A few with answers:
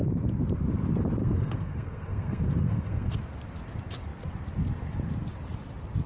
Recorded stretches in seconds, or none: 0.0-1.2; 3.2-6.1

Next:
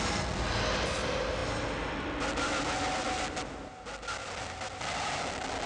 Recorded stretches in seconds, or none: 0.0-5.7

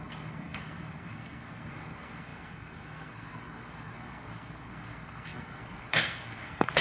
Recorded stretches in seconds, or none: none

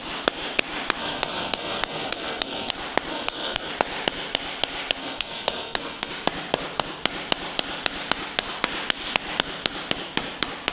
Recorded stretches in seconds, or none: 0.0-1.0; 2.7-3.1; 3.7-5.0; 6.1-10.7

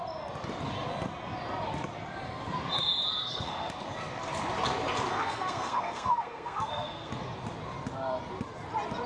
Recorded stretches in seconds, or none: 0.0-3.2; 3.7-5.1; 7.1-9.1

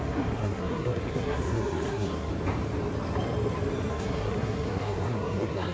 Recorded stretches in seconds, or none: 2.3-3.9

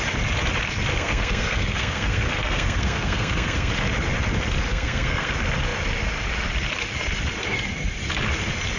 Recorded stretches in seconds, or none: 0.0-0.9; 3.7-4.7; 5.3-8.8